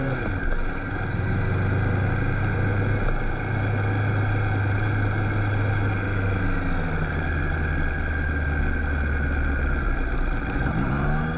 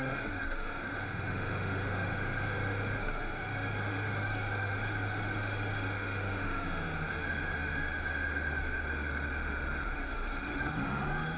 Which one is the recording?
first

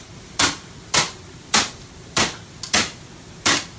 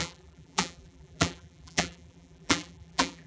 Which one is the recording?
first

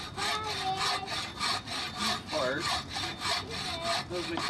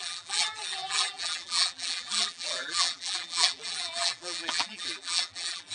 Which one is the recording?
first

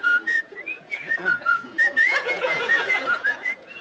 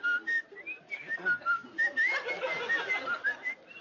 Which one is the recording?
second